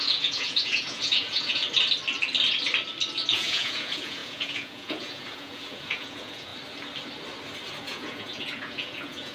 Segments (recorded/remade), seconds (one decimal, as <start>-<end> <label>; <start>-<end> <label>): 0.0-1.6 remade; 1.6-3.3 recorded; 3.3-6.5 remade; 6.5-7.8 recorded; 7.8-9.3 remade